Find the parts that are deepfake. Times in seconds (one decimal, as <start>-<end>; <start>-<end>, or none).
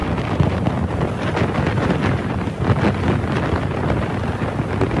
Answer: none